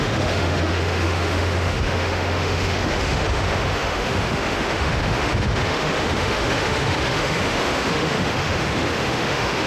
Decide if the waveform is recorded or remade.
remade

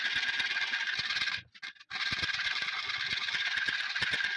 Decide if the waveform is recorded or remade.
recorded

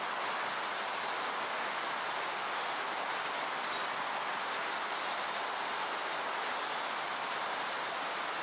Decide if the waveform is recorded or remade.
recorded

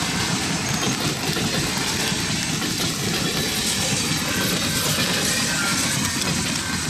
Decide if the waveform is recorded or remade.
remade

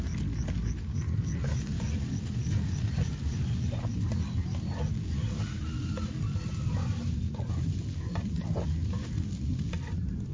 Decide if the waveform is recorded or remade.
recorded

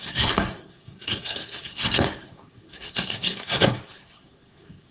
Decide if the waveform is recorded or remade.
remade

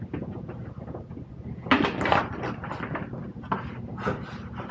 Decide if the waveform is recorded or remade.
recorded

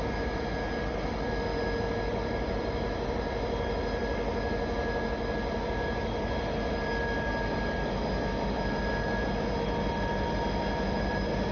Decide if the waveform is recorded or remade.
recorded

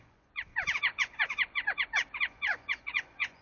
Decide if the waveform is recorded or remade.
remade